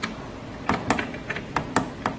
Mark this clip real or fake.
real